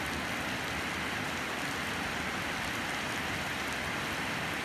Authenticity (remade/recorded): recorded